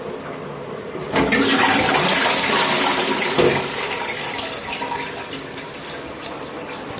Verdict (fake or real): fake